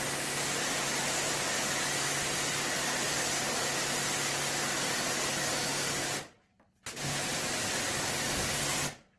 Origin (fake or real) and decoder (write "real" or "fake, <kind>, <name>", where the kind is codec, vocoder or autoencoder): real